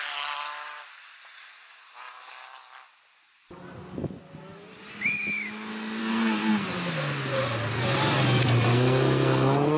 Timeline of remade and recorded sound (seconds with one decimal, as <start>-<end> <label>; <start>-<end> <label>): 0.0-6.0 recorded; 6.0-6.7 remade; 6.7-8.7 recorded; 8.7-9.8 remade